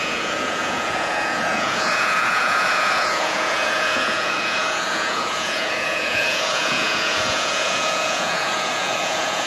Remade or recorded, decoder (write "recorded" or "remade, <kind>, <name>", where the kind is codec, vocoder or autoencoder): remade, vocoder, Vocos